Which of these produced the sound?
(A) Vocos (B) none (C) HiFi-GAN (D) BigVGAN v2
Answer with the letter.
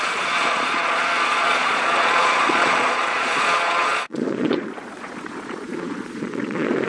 A